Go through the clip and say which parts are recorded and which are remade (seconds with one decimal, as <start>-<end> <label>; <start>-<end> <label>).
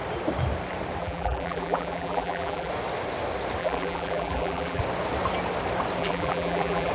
0.0-1.0 recorded; 1.0-2.7 remade; 2.7-3.6 recorded; 3.6-4.8 remade; 4.8-6.0 recorded; 6.0-6.9 remade